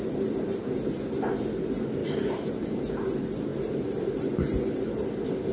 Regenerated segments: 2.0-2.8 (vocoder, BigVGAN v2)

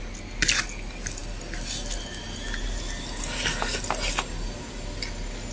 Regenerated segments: none